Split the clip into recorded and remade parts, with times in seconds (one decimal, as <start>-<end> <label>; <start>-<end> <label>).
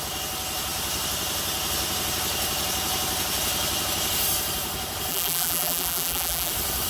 0.0-5.1 recorded; 5.1-6.5 remade; 6.5-6.9 recorded